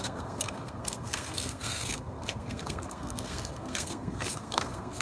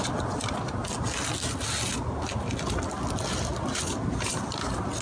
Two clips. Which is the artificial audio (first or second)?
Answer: first